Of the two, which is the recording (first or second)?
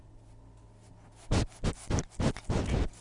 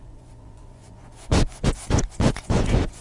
first